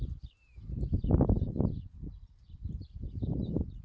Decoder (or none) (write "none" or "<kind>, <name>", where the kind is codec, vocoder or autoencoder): vocoder, BigVGAN v2